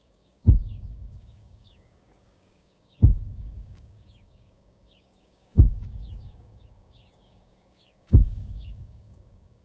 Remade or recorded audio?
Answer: remade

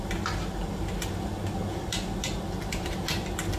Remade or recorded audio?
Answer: recorded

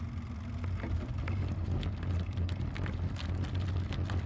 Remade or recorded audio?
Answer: recorded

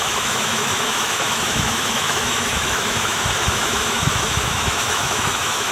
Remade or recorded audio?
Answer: remade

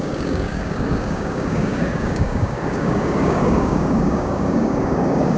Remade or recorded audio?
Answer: remade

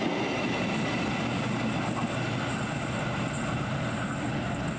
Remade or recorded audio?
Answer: recorded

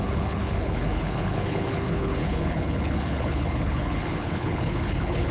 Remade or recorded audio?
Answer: remade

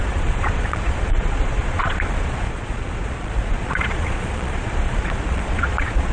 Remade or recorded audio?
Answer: remade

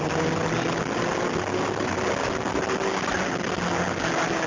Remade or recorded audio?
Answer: recorded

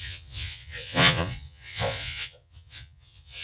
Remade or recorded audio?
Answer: remade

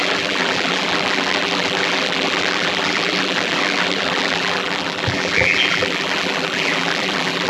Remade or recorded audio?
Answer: remade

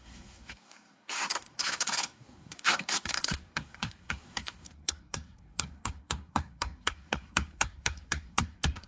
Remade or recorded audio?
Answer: remade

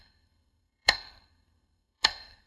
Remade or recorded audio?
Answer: remade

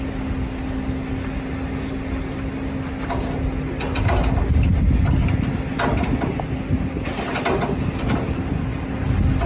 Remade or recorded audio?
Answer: recorded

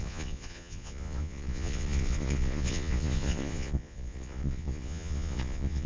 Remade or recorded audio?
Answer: remade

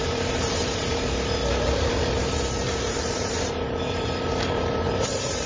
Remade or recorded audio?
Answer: remade